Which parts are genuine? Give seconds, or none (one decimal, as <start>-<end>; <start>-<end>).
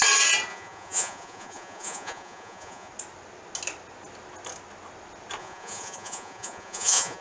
0.0-0.5; 2.9-5.4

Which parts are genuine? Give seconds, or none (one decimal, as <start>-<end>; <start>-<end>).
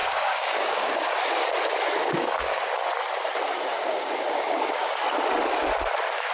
1.1-2.0; 2.7-3.7; 5.0-6.3